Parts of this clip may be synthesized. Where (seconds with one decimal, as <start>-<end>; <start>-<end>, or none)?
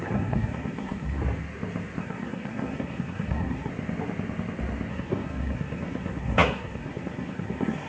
0.0-1.2; 2.0-3.7; 4.9-7.9